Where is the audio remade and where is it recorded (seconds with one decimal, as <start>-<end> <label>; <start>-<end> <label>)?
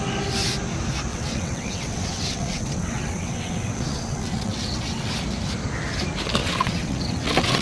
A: 0.0-1.1 recorded; 1.1-5.1 remade; 5.1-6.4 recorded; 6.4-7.6 remade